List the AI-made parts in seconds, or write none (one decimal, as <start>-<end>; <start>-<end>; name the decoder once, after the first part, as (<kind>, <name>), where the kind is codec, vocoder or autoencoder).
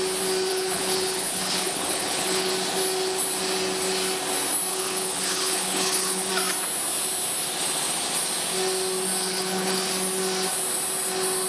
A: 0.5-2.5 (codec, HILCodec); 4.7-6.3; 9.2-9.9